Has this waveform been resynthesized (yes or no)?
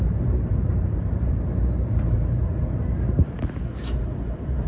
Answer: yes